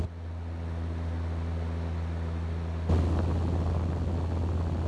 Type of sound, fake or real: real